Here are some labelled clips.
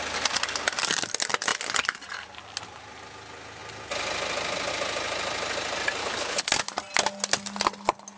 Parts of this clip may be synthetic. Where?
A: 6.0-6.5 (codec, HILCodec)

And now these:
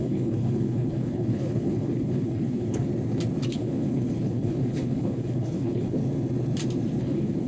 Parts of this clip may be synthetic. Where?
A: 0.0-2.9 (codec, HILCodec); 3.5-6.0; 7.0-7.5

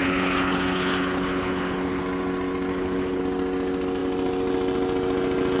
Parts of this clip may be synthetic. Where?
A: 0.0-2.0 (codec, HILCodec); 2.7-3.2

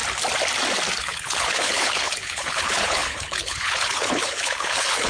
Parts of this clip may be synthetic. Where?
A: 1.0-5.1 (codec, HILCodec)

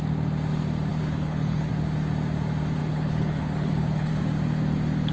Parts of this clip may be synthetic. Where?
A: 0.9-1.7 (codec, HILCodec); 2.8-4.1

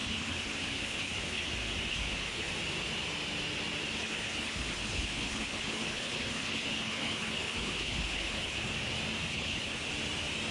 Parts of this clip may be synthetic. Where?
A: 0.0-1.5 (codec, HILCodec); 1.9-2.5; 4.0-8.6; 9.3-9.9

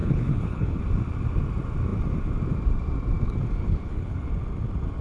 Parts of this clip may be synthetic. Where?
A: 0.0-0.8 (codec, HILCodec); 3.6-4.3

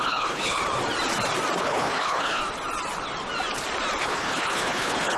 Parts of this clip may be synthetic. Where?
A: 0.0-0.6 (codec, HILCodec); 1.6-2.4; 4.0-5.2